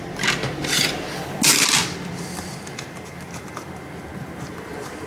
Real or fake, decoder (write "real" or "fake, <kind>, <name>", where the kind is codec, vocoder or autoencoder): real